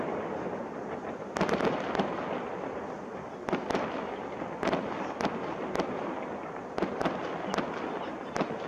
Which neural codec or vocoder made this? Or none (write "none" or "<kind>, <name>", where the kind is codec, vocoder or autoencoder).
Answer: none